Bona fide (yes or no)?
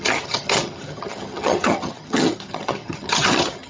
no